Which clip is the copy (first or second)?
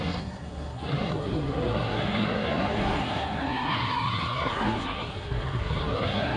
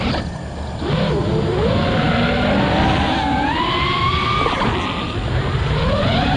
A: first